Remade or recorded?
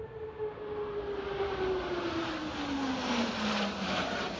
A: recorded